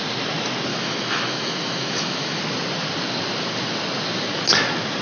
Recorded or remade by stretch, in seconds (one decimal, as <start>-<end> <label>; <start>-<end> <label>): 0.0-0.7 recorded; 0.7-2.4 remade; 2.4-5.0 recorded